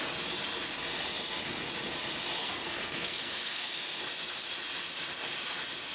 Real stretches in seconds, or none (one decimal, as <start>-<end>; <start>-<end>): 0.0-2.4; 4.0-5.9